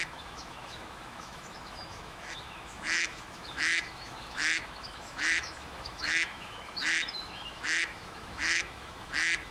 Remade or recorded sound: remade